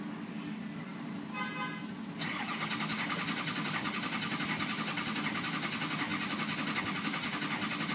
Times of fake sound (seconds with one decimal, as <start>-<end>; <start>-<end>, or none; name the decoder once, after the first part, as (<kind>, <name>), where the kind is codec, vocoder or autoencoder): none